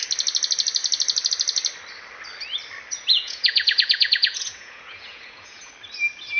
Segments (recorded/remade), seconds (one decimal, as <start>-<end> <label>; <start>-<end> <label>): 0.0-3.1 recorded; 3.1-5.7 remade; 5.7-6.4 recorded